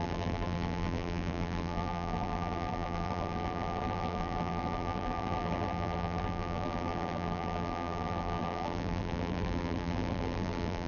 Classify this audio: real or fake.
fake